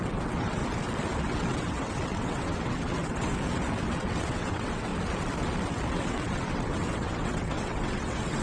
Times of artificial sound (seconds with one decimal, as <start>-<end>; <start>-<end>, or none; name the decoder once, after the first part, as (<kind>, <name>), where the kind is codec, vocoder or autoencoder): 0.0-0.6 (vocoder, WaveNeXt); 1.2-3.3; 3.8-4.9; 5.9-8.4